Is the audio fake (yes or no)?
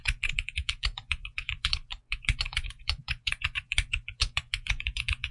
yes